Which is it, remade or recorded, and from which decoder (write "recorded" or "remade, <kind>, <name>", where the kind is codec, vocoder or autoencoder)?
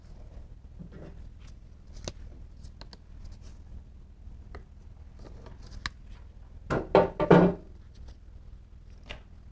recorded